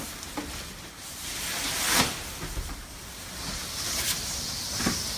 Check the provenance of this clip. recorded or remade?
recorded